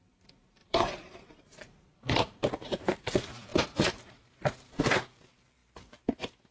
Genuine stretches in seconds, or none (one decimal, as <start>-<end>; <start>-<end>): 0.0-0.6; 3.0-3.5; 4.7-5.6